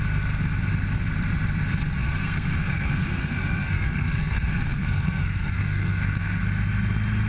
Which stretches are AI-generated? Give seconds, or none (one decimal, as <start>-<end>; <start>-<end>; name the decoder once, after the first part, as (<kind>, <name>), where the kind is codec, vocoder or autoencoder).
2.0-6.4 (codec, SNAC)